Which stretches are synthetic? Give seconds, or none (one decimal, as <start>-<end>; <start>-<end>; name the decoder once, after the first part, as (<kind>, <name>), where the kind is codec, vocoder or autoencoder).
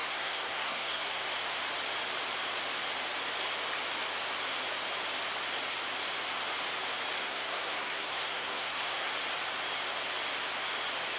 0.0-1.3 (codec, SNAC); 7.2-9.1